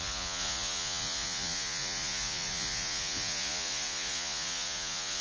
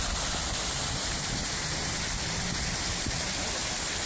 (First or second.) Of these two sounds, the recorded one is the second